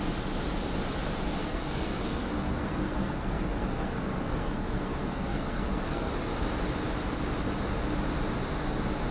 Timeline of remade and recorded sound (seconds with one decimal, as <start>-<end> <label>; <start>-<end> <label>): 0.0-1.4 recorded; 1.4-6.1 remade; 6.1-9.1 recorded